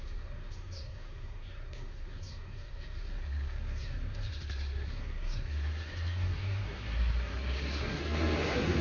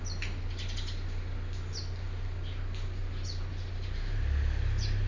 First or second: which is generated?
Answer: first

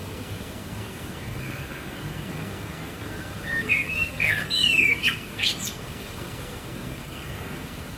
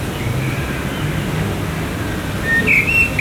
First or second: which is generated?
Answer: first